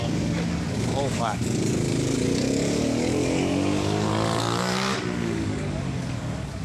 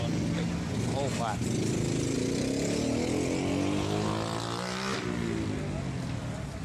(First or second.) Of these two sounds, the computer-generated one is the first